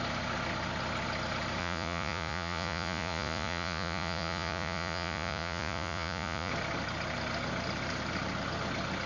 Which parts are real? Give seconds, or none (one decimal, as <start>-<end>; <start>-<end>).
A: 0.0-1.6; 6.5-9.1